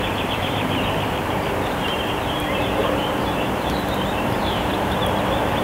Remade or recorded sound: remade